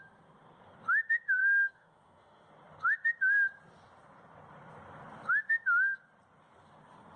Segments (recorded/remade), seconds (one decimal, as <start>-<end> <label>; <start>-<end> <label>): 0.0-1.4 recorded; 1.4-2.5 remade; 2.5-7.2 recorded